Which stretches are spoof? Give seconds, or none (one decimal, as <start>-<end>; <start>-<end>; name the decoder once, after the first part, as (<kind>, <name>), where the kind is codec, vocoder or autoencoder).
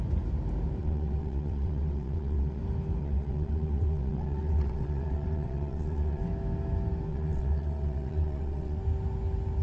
0.8-2.6 (vocoder, WaveNeXt); 3.0-6.2; 7.1-8.8